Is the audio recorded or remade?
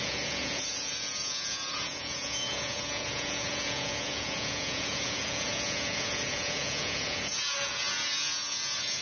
remade